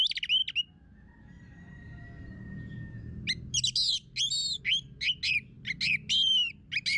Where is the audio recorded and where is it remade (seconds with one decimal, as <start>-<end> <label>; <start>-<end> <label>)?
0.0-7.0 recorded